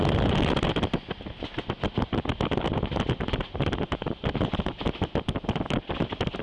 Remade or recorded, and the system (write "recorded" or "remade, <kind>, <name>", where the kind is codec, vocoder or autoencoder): recorded